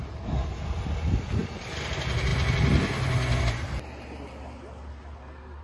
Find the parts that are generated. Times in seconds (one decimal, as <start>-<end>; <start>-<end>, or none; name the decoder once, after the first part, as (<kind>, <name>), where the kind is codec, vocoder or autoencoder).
none